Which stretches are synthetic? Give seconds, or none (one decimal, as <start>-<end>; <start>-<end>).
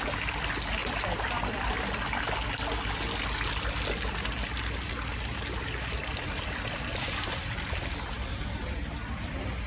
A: none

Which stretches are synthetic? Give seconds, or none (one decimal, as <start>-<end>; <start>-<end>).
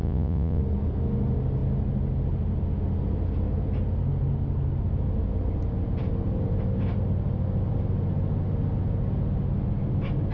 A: 0.0-0.6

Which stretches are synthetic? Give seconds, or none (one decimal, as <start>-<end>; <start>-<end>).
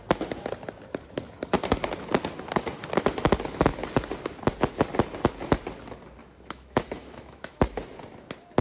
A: 6.2-7.6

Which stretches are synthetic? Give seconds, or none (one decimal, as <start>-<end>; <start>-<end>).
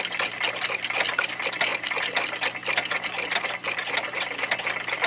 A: none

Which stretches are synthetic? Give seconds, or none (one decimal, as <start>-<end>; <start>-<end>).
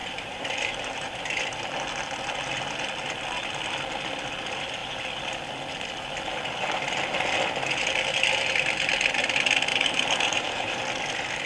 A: 0.0-1.2; 9.7-10.8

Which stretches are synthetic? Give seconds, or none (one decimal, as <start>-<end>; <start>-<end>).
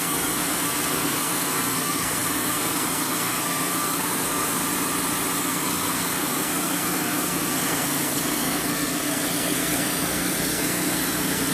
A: 0.0-4.6; 5.4-11.5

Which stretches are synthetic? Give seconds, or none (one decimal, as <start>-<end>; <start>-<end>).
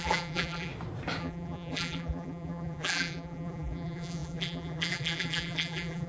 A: 0.0-0.7; 1.2-6.1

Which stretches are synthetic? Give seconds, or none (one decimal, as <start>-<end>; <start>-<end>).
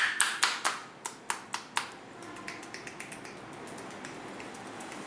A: none